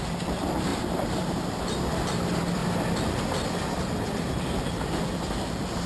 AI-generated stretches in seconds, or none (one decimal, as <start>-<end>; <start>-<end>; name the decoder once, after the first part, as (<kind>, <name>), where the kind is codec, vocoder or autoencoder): 0.0-2.6 (vocoder, BigVGAN v2); 3.1-5.9